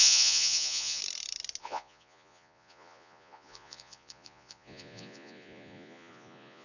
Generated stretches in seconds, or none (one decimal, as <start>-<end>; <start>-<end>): 0.0-1.0; 1.6-6.6